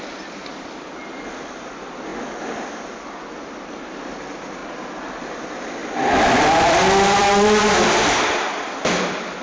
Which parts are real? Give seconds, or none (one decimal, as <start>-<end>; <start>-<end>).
2.1-3.4; 4.6-5.2